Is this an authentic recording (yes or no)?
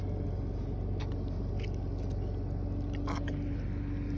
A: yes